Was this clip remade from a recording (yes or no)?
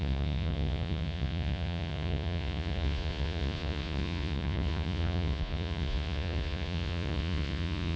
yes